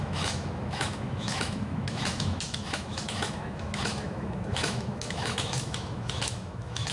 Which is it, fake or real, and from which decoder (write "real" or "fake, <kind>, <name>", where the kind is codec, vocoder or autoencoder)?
fake, autoencoder, DAC-VAE